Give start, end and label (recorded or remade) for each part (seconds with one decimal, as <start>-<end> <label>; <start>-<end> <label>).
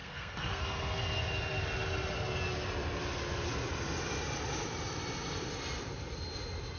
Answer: 0.0-0.6 remade; 0.6-6.8 recorded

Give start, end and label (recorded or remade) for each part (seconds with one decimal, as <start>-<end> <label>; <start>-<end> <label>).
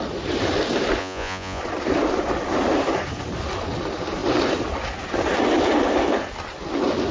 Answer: 0.0-1.0 recorded; 1.0-1.6 remade; 1.6-7.1 recorded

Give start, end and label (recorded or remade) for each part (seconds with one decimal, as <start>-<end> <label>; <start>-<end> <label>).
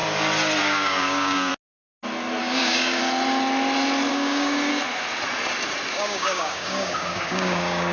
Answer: 0.0-0.6 recorded; 0.6-1.5 remade; 1.5-2.4 recorded; 2.4-3.0 remade; 3.0-4.1 recorded; 4.1-4.7 remade; 4.7-5.9 recorded; 5.9-7.9 remade